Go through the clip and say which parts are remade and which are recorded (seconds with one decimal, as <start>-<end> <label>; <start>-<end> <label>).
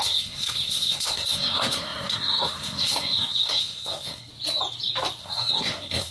0.0-4.3 remade; 4.3-5.2 recorded; 5.2-6.1 remade